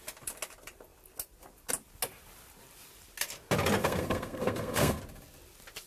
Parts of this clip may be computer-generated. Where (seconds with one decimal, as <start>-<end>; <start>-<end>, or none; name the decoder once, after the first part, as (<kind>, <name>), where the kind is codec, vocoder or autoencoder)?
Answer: 3.8-5.0 (codec, SNAC)